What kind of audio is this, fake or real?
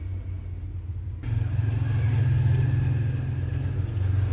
real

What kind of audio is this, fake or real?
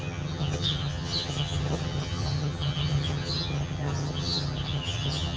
fake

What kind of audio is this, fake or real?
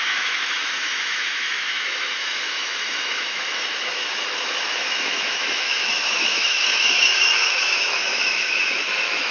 fake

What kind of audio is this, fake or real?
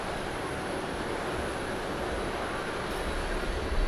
real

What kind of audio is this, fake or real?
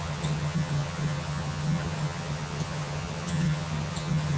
fake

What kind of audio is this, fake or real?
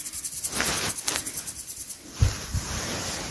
real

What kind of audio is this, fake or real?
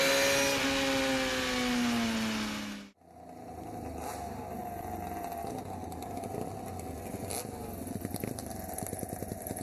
real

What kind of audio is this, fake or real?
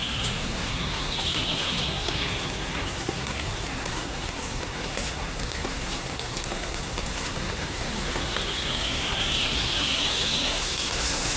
fake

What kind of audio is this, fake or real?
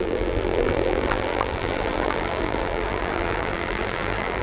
fake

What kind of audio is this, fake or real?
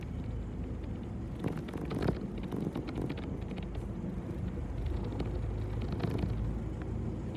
real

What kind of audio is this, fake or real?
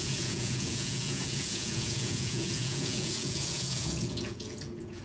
fake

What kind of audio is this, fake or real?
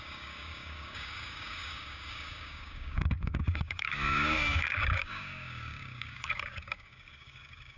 fake